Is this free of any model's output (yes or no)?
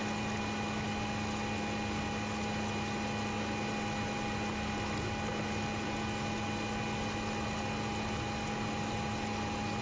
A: yes